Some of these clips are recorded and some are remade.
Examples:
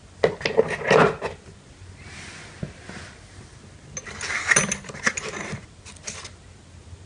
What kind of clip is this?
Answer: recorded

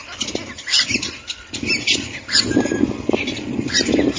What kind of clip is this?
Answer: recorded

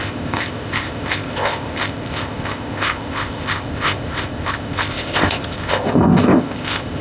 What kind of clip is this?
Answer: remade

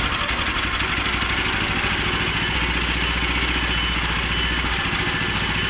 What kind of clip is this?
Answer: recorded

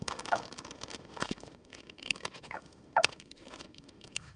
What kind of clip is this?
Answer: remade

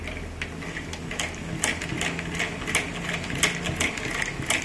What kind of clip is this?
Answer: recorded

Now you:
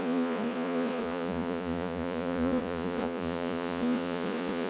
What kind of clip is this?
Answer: remade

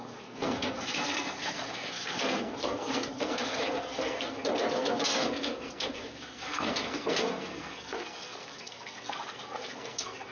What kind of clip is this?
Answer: remade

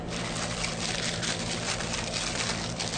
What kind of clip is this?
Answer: remade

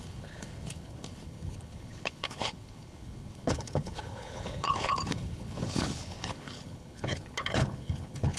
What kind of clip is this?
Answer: remade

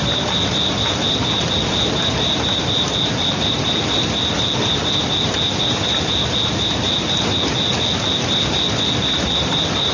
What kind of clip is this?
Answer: recorded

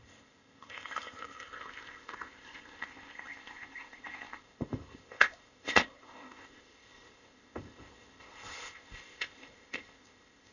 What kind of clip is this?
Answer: remade